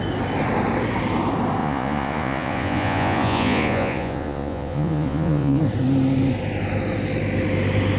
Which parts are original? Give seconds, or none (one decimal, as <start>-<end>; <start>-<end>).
0.0-1.6; 5.6-8.0